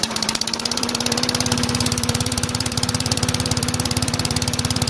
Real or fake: fake